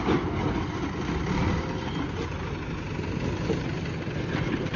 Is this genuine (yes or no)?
yes